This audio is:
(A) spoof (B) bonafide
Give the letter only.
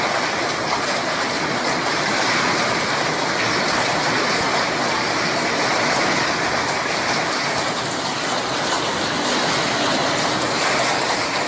B